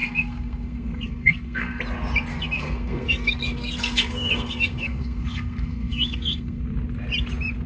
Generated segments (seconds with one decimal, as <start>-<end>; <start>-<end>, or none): 0.0-1.8; 2.3-6.6